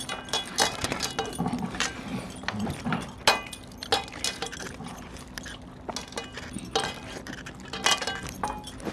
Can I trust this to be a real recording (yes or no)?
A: yes